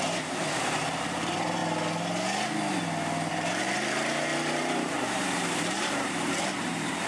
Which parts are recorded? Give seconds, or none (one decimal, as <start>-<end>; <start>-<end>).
1.6-3.3